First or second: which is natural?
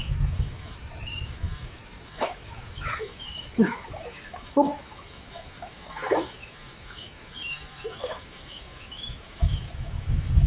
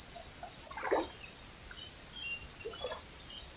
second